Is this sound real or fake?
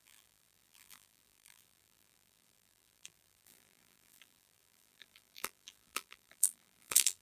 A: fake